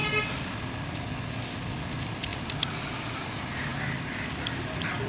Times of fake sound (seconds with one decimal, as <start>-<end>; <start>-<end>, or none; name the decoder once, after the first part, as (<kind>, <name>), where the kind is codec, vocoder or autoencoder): none